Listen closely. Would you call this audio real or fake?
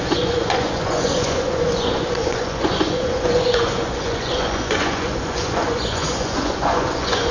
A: fake